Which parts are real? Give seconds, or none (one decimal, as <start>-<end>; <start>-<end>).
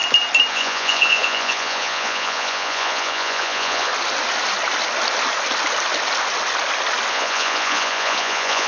0.0-0.5; 3.9-7.1